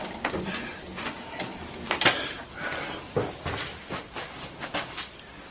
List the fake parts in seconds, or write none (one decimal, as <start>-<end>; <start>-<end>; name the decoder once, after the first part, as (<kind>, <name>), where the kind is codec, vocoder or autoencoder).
3.7-5.1 (codec, DAC)